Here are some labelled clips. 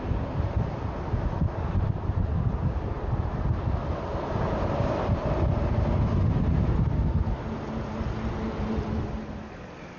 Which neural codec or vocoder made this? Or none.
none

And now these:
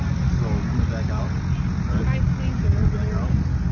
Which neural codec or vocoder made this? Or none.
none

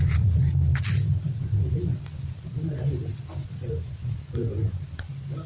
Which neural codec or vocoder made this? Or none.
none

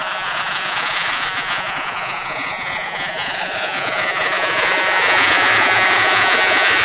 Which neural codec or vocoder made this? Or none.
vocoder, Vocos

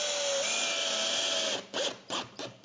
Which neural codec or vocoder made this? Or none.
none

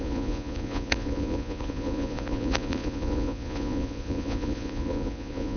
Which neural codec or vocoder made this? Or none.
vocoder, Vocos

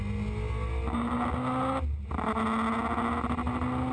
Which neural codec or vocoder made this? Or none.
none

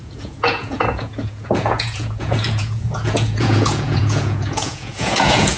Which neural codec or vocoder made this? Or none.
vocoder, Vocos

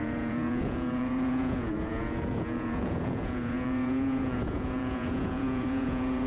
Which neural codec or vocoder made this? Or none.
vocoder, Vocos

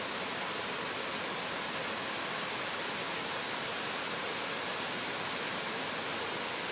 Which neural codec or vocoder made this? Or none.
none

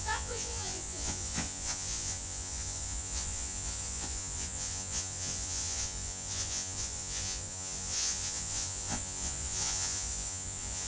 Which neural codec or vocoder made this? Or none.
vocoder, Vocos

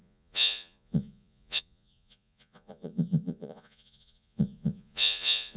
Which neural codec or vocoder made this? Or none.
vocoder, Vocos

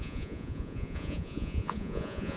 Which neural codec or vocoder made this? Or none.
vocoder, Vocos